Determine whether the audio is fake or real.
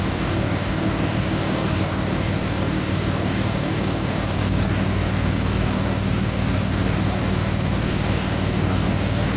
fake